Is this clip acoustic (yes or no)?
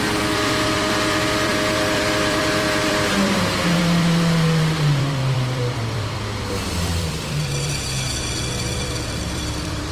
no